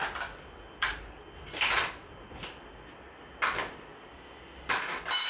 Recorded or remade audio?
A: recorded